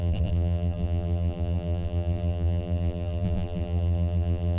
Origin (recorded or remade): remade